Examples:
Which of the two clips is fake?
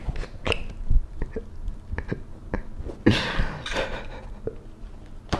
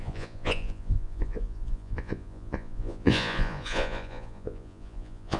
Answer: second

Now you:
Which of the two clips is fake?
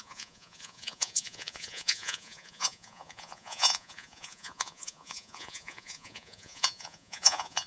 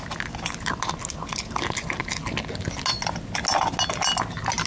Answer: first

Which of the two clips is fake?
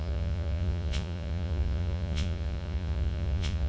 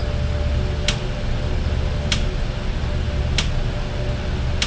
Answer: first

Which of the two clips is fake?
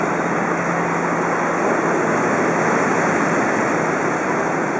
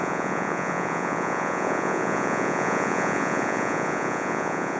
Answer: second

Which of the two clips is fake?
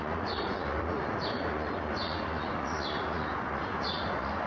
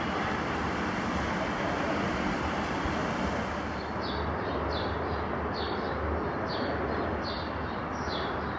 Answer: first